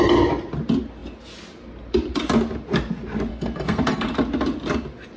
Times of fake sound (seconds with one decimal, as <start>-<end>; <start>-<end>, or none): 3.3-4.1